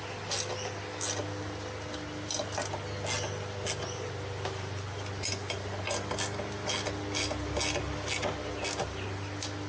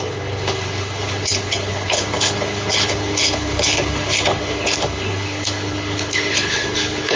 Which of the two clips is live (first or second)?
first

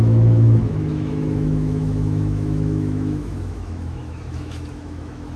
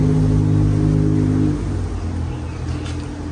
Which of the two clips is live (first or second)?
second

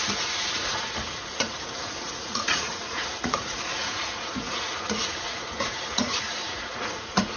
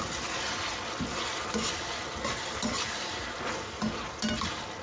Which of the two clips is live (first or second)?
second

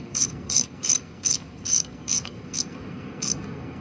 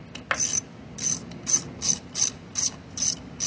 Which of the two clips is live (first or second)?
second